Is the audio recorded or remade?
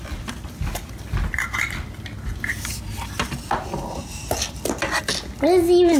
recorded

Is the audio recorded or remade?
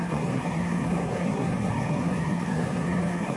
remade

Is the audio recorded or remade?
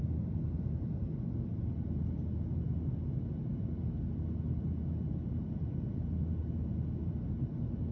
recorded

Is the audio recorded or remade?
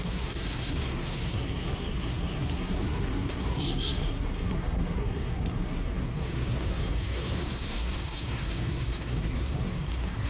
remade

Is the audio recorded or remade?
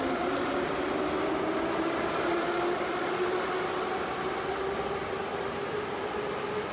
recorded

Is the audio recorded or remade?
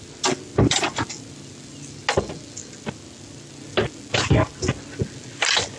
recorded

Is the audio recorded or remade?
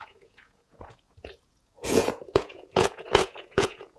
remade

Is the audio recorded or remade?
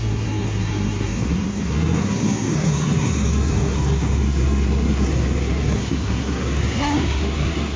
remade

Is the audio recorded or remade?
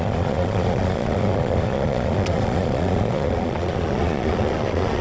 remade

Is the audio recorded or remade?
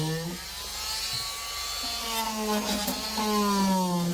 recorded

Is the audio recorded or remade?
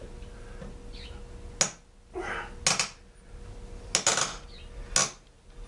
recorded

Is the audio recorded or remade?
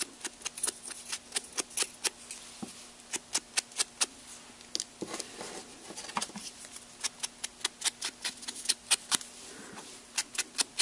recorded